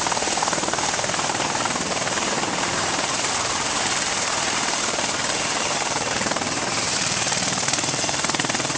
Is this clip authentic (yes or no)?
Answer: no